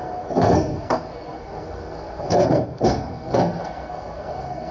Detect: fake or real fake